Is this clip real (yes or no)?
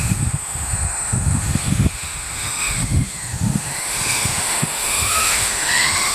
no